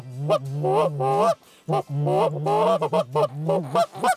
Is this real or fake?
real